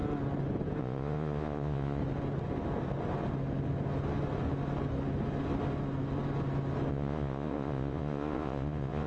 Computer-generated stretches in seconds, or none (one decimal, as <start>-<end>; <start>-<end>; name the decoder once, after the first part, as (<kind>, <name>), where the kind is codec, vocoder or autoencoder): 0.8-2.0 (vocoder, Vocos); 6.9-9.1